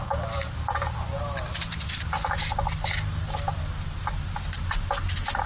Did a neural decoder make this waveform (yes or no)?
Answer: yes